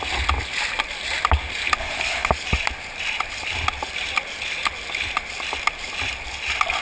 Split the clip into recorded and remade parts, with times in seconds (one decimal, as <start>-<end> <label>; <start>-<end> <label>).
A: 0.0-1.8 recorded; 1.8-2.3 remade; 2.3-6.8 recorded